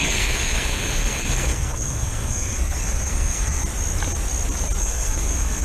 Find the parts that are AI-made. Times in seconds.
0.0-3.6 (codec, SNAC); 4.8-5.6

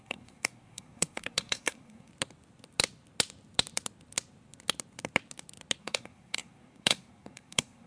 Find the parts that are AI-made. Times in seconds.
0.0-2.1 (codec, SNAC); 5.8-7.9

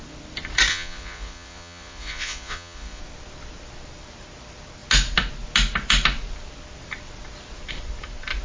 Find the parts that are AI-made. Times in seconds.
0.7-3.0 (vocoder, Vocos)

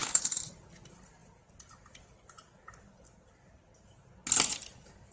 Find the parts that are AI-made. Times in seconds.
none

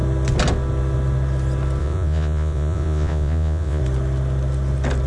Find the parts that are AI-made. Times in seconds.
1.8-3.8 (vocoder, Vocos)